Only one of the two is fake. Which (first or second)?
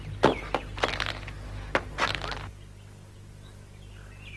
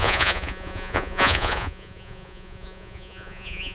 second